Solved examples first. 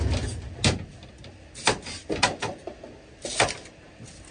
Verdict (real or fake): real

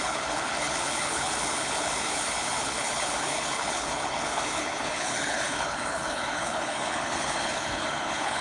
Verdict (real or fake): fake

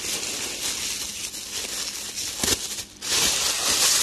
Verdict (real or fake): real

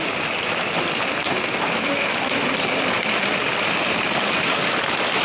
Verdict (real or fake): real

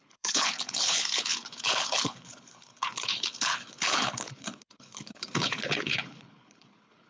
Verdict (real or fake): fake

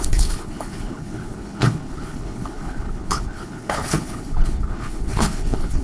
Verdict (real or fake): fake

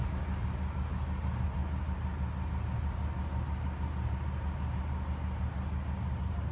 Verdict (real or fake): real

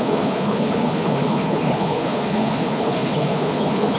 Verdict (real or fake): fake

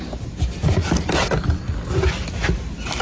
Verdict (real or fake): real